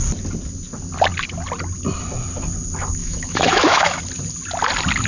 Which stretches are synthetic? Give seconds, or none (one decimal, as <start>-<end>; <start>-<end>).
3.0-4.0